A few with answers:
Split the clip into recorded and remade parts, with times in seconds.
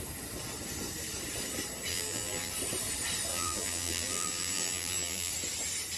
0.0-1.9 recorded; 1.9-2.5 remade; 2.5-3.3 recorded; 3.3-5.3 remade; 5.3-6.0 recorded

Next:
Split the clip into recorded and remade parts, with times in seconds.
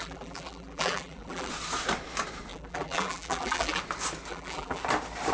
0.0-1.5 remade; 1.5-2.5 recorded; 2.5-3.8 remade; 3.8-4.3 recorded; 4.3-4.8 remade; 4.8-5.3 recorded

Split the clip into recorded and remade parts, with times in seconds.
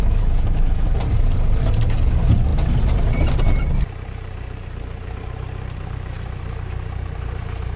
0.0-7.8 remade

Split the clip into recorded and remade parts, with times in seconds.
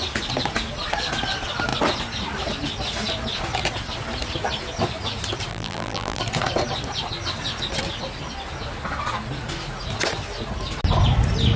0.0-5.5 recorded; 5.5-6.2 remade; 6.2-11.6 recorded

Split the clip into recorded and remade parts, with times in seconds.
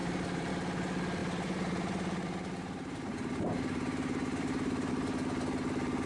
0.0-0.5 remade; 0.5-1.2 recorded; 1.2-4.9 remade; 4.9-6.1 recorded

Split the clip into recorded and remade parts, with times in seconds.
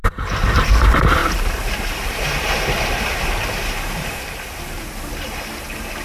0.0-0.6 remade; 0.6-1.2 recorded; 1.2-4.8 remade; 4.8-6.0 recorded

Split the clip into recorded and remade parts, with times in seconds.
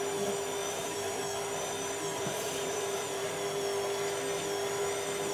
0.0-0.6 recorded; 0.6-1.2 remade; 1.2-2.1 recorded; 2.1-3.3 remade; 3.3-5.3 recorded